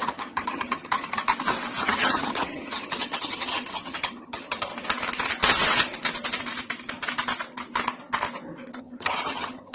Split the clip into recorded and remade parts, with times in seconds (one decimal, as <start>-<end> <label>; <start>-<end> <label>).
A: 0.0-1.2 remade; 1.2-1.8 recorded; 1.8-4.7 remade; 4.7-8.8 recorded; 8.8-9.7 remade